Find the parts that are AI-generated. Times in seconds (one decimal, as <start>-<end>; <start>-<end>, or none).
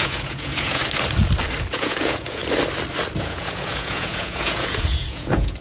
0.0-0.8; 1.7-2.4; 3.2-5.6